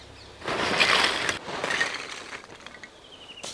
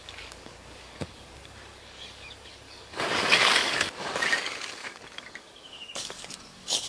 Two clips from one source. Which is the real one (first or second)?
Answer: first